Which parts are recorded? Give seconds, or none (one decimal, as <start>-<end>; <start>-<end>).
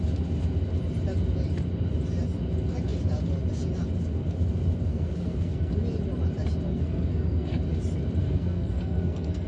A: 0.0-4.9; 5.7-6.7; 7.6-8.2